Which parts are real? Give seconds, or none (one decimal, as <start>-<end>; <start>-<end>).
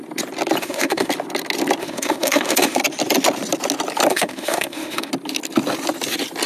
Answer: 0.0-0.6; 1.1-1.8; 2.8-4.1; 5.1-6.5